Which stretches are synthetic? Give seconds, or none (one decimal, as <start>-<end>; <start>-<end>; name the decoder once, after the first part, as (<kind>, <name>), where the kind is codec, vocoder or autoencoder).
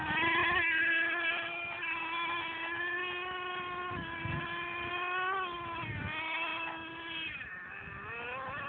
none